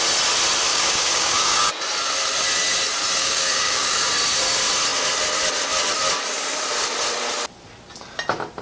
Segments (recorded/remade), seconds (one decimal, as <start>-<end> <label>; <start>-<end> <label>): 0.0-0.7 recorded; 0.7-1.7 remade; 1.7-3.2 recorded; 3.2-4.1 remade; 4.1-8.6 recorded

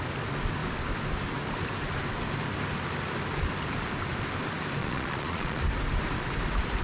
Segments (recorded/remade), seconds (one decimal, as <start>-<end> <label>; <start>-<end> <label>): 0.0-4.8 recorded; 4.8-5.6 remade; 5.6-6.8 recorded

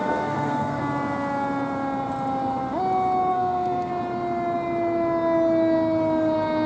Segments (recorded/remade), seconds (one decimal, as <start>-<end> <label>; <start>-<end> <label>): 0.0-0.8 remade; 0.8-3.3 recorded; 3.3-3.9 remade; 3.9-6.7 recorded

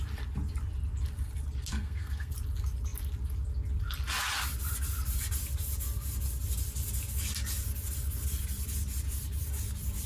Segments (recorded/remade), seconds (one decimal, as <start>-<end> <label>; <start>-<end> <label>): 0.0-1.7 recorded; 1.7-2.3 remade; 2.3-10.1 recorded

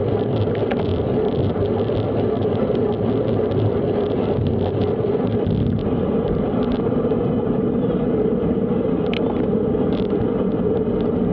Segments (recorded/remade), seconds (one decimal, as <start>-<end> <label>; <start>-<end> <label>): 0.0-0.9 recorded; 0.9-1.5 remade; 1.5-5.8 recorded; 5.8-10.6 remade; 10.6-11.3 recorded

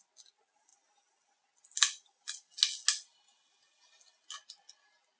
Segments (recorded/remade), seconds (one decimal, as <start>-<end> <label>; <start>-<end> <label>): 0.0-5.2 recorded

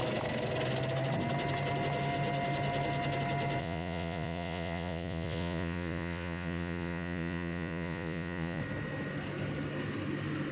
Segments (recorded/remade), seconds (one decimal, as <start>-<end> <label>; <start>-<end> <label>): 0.0-3.6 recorded; 3.6-8.6 remade; 8.6-10.5 recorded